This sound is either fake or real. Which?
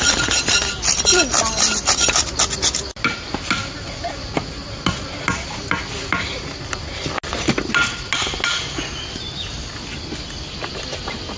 real